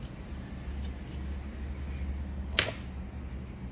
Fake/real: real